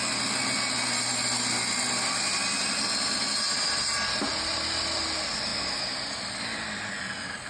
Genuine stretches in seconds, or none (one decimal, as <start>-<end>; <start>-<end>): 0.0-7.5